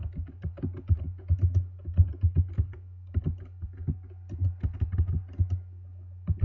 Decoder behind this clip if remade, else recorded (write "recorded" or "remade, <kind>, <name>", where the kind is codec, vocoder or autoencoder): recorded